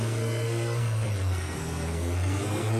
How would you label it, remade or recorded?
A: remade